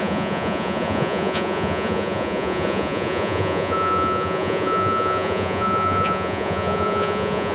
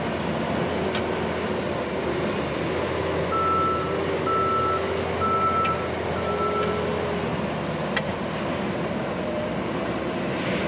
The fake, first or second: first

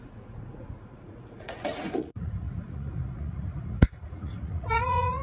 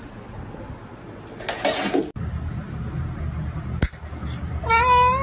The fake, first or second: first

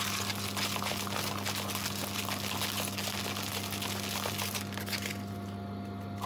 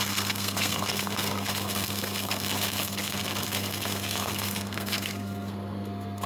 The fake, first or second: second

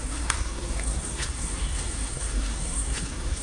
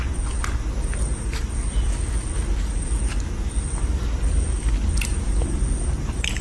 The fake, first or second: first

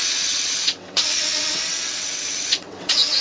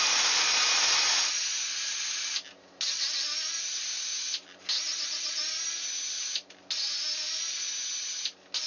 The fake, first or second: first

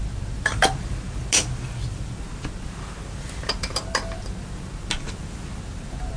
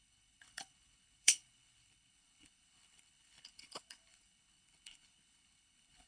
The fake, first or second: second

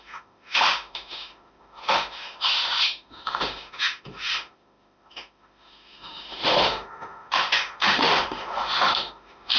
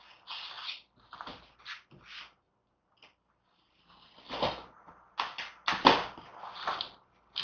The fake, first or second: first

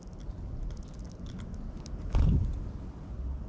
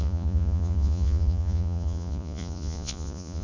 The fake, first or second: second